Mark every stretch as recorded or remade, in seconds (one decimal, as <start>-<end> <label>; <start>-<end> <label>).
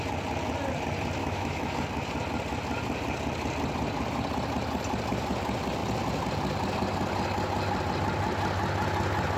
0.0-1.2 recorded; 1.2-1.7 remade; 1.7-9.4 recorded